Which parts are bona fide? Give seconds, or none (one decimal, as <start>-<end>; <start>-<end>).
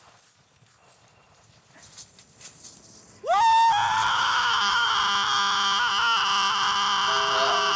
0.0-4.1; 4.9-7.8